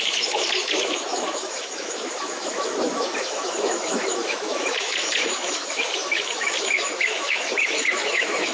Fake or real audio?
fake